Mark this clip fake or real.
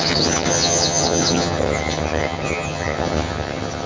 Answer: fake